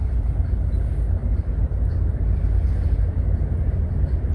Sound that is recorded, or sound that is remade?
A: recorded